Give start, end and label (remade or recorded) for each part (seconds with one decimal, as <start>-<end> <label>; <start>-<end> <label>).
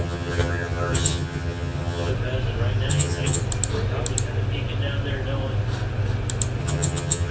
0.0-2.1 remade; 2.1-2.9 recorded; 2.9-3.4 remade; 3.4-6.6 recorded; 6.6-7.3 remade